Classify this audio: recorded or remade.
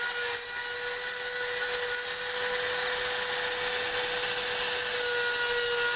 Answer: recorded